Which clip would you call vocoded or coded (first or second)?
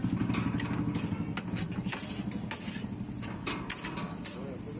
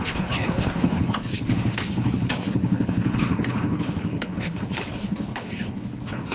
second